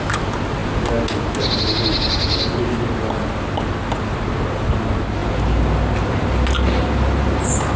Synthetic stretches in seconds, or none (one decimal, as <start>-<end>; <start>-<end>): none